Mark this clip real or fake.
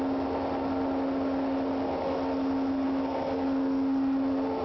real